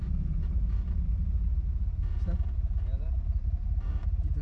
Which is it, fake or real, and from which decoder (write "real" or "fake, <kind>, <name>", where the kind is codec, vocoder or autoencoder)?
real